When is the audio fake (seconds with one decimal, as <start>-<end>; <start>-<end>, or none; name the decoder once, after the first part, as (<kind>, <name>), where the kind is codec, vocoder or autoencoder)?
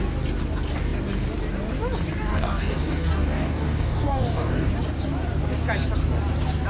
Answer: 2.3-4.7 (codec, DAC)